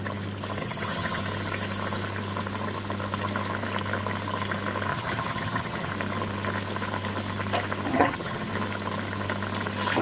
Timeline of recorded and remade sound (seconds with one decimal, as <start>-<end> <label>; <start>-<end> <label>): 0.0-0.6 recorded; 0.6-1.2 remade; 1.2-4.9 recorded; 4.9-5.9 remade; 5.9-7.9 recorded; 7.9-8.5 remade; 8.5-10.0 recorded